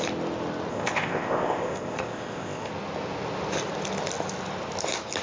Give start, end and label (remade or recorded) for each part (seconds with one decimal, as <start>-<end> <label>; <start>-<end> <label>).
0.0-0.7 recorded; 0.7-2.7 remade; 2.7-5.2 recorded